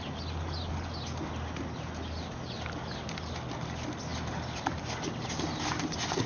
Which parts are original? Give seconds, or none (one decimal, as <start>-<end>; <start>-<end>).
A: 0.0-4.1; 4.8-6.3